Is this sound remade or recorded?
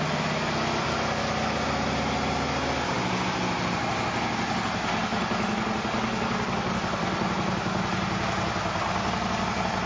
recorded